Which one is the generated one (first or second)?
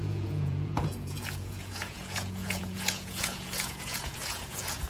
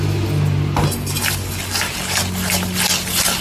first